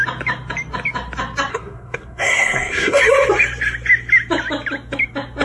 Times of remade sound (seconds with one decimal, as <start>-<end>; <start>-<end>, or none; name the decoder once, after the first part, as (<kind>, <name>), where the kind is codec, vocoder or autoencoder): 1.5-3.0 (codec, SNAC)